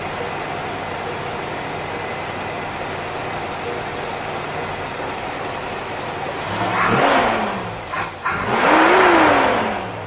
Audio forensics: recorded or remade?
recorded